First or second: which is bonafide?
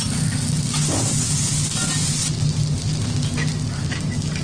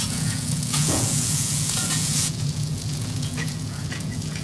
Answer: first